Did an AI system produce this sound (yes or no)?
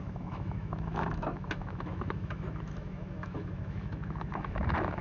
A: yes